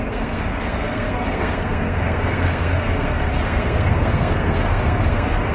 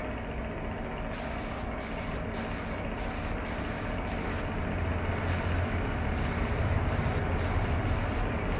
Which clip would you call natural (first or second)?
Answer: second